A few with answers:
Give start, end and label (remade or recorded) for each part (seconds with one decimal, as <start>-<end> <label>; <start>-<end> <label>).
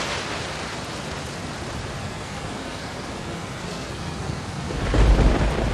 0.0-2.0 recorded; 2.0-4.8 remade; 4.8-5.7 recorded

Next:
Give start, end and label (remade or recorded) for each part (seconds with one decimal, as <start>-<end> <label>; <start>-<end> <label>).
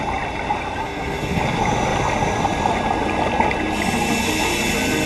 0.0-0.8 recorded; 0.8-1.4 remade; 1.4-5.1 recorded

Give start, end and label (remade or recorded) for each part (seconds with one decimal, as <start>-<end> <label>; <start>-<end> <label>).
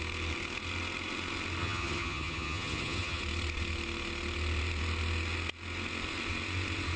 0.0-1.6 recorded; 1.6-3.2 remade; 3.2-7.0 recorded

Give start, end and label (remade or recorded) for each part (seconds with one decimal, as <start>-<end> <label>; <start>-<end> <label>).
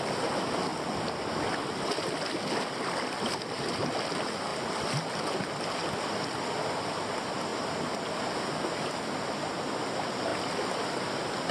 0.0-11.5 recorded